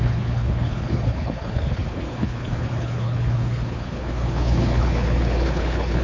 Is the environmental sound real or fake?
fake